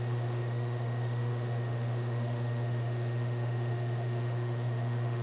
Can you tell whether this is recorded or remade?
remade